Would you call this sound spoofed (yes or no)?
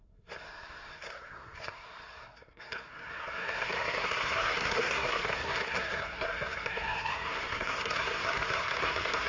yes